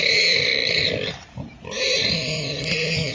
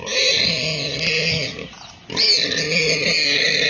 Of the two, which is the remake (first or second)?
first